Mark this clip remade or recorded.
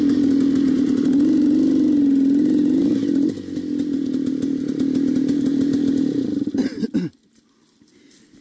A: recorded